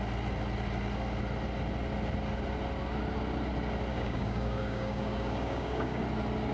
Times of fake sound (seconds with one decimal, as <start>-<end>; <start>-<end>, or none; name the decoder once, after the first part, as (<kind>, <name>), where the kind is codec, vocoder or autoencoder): 3.9-6.0 (codec, DAC)